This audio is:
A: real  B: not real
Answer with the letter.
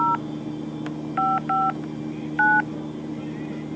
A